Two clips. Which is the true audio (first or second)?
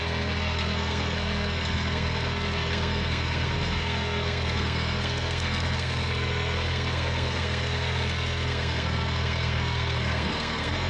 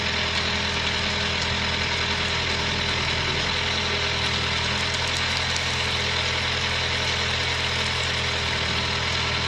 second